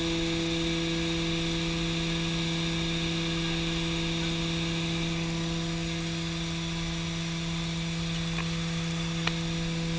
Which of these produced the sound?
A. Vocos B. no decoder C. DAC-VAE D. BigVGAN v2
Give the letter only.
B